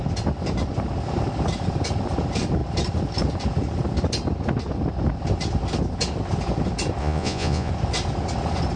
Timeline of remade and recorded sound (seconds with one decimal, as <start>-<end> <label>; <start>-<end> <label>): 0.0-7.0 recorded; 7.0-7.7 remade; 7.7-8.8 recorded